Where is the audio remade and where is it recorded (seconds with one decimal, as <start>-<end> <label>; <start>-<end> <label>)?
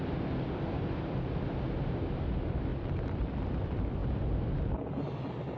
0.0-2.7 recorded; 2.7-3.3 remade; 3.3-5.6 recorded